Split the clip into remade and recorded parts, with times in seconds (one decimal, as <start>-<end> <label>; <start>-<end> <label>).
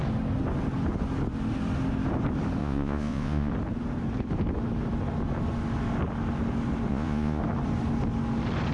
0.0-2.6 recorded; 2.6-3.5 remade; 3.5-6.9 recorded; 6.9-7.4 remade; 7.4-8.7 recorded